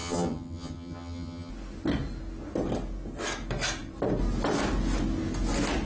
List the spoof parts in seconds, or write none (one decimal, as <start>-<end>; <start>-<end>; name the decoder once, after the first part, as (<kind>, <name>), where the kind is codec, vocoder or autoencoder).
0.0-1.5 (vocoder, HiFi-GAN)